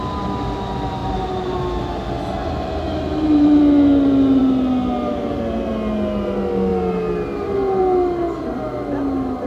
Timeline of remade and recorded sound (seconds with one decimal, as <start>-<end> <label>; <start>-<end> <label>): 0.0-1.0 recorded; 1.0-1.6 remade; 1.6-2.4 recorded; 2.4-3.6 remade; 3.6-9.5 recorded